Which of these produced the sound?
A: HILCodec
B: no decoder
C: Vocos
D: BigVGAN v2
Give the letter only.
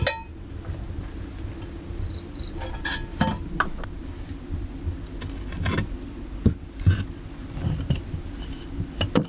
B